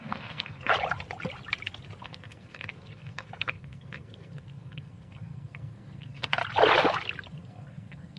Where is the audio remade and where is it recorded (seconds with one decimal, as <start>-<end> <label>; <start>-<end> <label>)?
0.0-0.7 remade; 0.7-2.0 recorded; 2.0-6.4 remade; 6.4-7.3 recorded; 7.3-8.2 remade